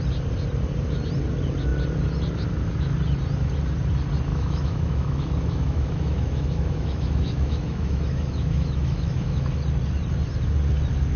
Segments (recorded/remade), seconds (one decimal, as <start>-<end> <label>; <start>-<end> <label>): 0.0-4.3 recorded; 4.3-9.5 remade; 9.5-11.2 recorded